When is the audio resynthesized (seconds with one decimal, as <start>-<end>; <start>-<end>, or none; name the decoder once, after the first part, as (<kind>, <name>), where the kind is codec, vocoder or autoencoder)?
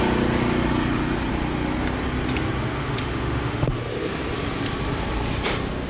2.8-3.7 (autoencoder, DAC-VAE)